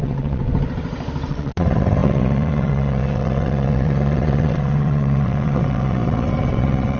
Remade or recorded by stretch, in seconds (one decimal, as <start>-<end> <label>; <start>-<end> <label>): 0.0-0.4 remade; 0.4-1.3 recorded; 1.3-7.0 remade